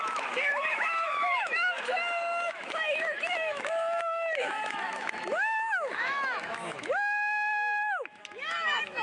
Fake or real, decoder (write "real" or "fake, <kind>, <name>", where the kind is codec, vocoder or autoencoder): fake, autoencoder, DAC-VAE